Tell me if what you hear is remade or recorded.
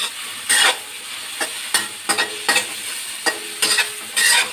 recorded